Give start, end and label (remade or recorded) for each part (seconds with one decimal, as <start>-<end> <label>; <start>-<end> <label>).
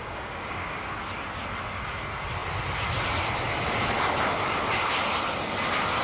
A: 0.0-0.9 remade; 0.9-6.0 recorded